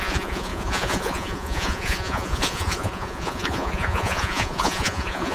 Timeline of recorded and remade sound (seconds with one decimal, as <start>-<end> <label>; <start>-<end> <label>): 0.0-5.3 remade